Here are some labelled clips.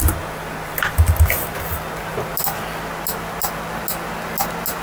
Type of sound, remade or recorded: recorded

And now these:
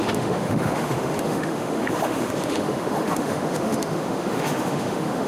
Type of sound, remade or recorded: remade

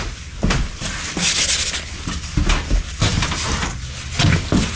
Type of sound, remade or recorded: recorded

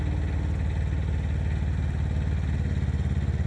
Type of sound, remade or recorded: recorded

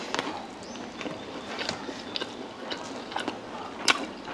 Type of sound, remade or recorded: recorded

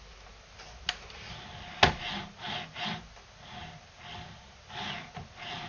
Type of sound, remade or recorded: recorded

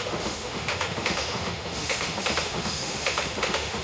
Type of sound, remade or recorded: remade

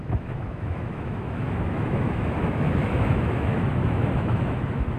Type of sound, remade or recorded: remade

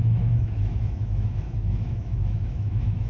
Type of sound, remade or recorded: remade